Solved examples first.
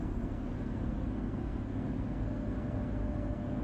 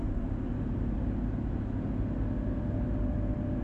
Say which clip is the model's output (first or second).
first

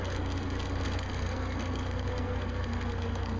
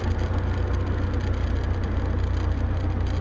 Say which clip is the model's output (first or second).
first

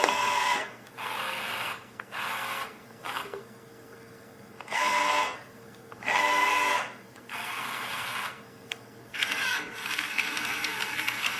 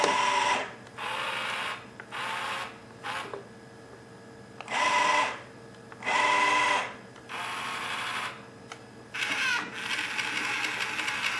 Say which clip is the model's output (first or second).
first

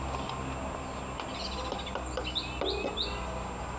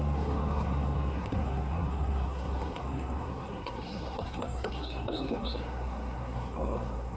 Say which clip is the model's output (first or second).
second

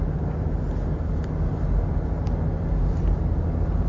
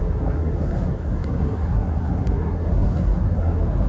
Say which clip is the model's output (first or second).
second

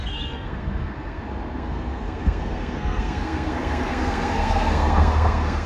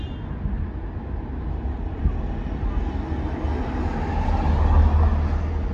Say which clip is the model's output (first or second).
first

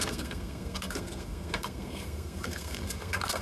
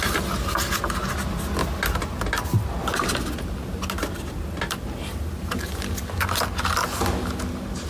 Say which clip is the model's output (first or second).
first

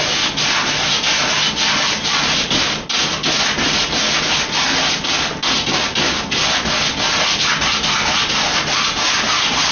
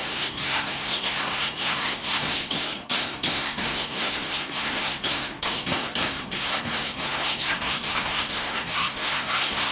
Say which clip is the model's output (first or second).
second